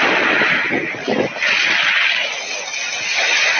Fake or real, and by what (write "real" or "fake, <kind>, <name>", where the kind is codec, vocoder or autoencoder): real